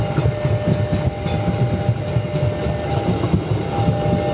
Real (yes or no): yes